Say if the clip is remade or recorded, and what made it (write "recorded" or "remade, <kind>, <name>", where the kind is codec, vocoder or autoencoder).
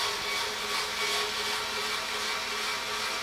recorded